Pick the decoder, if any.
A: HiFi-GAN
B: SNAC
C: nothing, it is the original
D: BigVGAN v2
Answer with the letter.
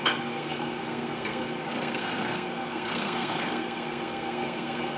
B